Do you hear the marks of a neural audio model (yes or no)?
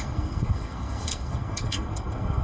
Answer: yes